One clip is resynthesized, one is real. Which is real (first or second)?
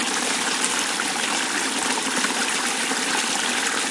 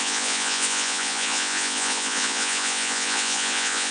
first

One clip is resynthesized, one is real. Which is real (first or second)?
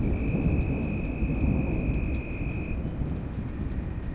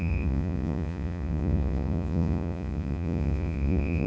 first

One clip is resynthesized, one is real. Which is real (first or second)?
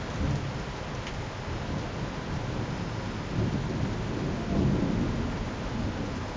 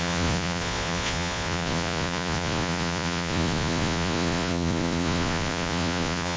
first